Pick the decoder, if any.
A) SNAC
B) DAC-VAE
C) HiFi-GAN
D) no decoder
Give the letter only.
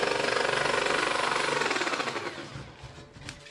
D